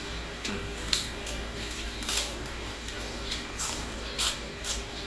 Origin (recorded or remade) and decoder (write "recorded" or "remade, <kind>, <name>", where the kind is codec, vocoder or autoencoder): remade, codec, DAC